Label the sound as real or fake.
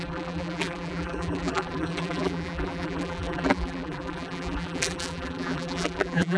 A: fake